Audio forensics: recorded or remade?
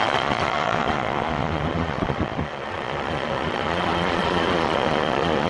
remade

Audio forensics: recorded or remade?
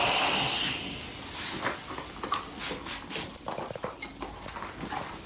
recorded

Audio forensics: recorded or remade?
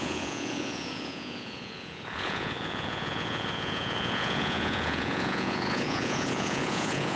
remade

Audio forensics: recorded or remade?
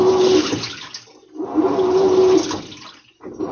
recorded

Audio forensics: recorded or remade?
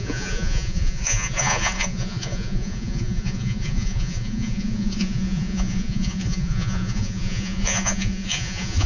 remade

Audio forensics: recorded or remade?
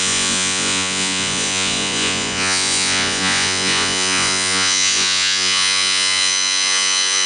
remade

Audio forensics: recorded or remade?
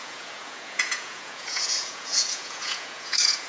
remade